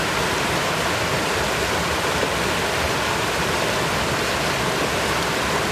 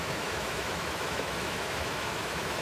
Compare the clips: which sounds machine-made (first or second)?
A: second